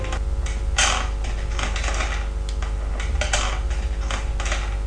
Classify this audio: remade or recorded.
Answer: recorded